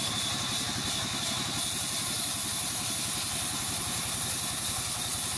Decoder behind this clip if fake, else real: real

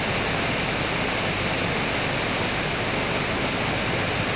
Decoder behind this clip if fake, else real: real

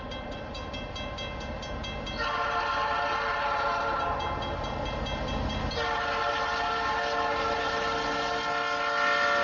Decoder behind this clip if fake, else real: real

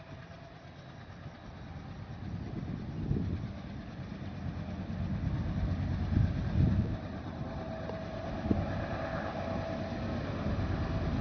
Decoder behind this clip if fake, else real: real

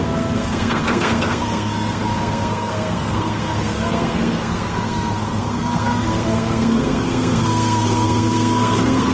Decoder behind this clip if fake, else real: fake, codec, SNAC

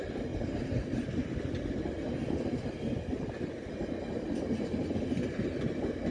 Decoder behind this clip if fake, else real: real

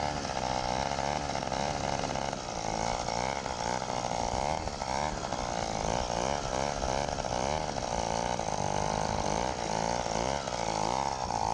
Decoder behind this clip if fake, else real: real